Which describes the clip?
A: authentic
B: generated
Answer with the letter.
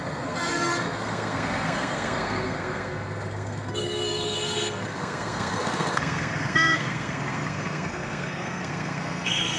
B